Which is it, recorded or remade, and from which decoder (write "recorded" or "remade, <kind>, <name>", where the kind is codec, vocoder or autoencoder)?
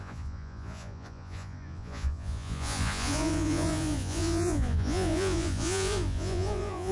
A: remade, vocoder, Vocos